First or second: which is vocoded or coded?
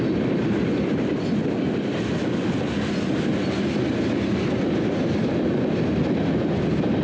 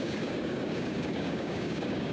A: second